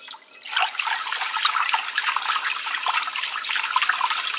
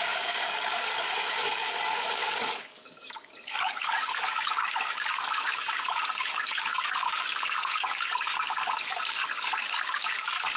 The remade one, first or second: second